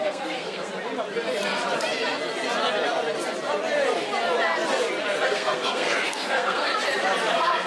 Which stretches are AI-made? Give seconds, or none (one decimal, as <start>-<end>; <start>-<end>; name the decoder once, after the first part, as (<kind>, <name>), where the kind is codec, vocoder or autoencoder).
0.0-0.7 (codec, SNAC); 5.3-6.7; 7.3-7.7